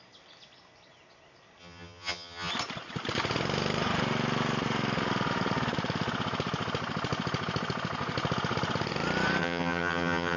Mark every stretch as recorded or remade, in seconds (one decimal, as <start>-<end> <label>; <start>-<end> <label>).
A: 0.0-1.6 recorded; 1.6-2.5 remade; 2.5-9.4 recorded; 9.4-10.4 remade